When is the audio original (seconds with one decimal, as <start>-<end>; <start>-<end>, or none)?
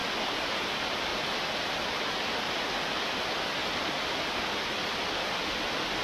0.0-1.1; 1.7-6.0